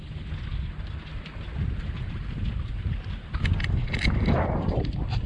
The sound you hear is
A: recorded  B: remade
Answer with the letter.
A